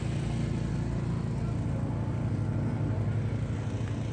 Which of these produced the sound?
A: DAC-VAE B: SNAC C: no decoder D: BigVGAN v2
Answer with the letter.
C